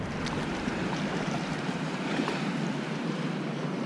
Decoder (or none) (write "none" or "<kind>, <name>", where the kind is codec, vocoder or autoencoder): vocoder, BigVGAN v2